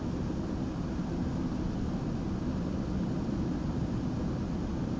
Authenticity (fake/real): real